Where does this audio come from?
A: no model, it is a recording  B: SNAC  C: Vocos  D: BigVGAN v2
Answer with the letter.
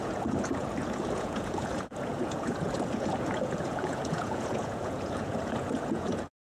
C